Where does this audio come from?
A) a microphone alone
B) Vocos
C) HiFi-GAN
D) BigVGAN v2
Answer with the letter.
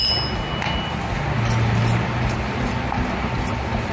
A